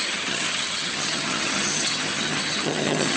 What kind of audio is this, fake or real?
fake